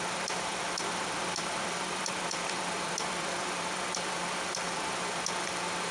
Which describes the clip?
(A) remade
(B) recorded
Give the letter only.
A